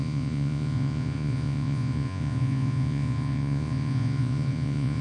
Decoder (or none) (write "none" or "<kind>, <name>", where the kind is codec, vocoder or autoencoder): vocoder, Vocos